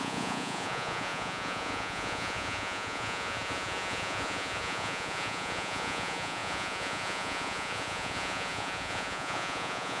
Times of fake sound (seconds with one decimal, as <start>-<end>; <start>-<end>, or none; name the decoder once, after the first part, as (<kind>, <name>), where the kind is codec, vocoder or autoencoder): 0.0-10.0 (vocoder, Vocos)